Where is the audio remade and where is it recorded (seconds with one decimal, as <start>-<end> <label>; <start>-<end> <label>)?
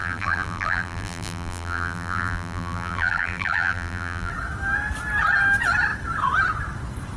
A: 0.0-4.3 remade; 4.3-7.2 recorded